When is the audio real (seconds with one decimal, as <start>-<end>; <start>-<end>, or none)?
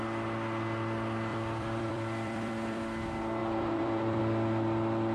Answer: 0.0-1.3; 2.8-3.4; 4.2-5.1